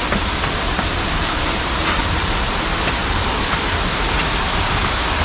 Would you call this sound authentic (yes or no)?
yes